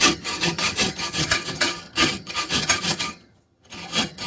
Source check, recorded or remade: remade